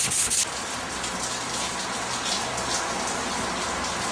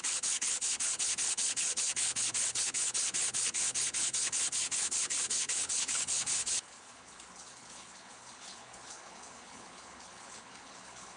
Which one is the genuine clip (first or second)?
first